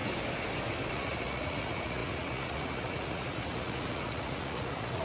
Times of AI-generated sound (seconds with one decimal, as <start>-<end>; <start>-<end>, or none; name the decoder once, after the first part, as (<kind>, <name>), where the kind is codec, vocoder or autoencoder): 0.9-5.0 (vocoder, Vocos)

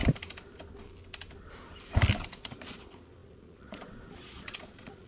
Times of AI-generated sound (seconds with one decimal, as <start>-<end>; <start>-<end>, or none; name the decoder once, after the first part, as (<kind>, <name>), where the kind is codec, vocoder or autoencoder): 2.3-5.1 (vocoder, Vocos)

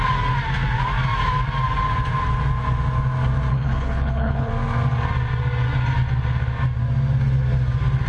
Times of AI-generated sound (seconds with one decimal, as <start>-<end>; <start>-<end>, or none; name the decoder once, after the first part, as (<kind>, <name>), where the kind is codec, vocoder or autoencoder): 3.5-4.5 (codec, HILCodec)